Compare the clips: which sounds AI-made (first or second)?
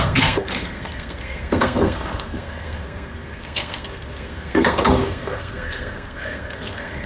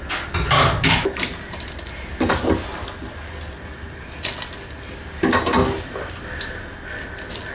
first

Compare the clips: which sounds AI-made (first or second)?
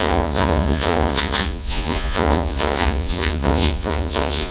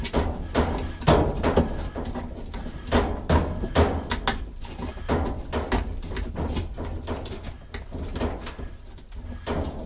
first